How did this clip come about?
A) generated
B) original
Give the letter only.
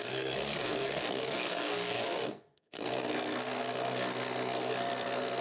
A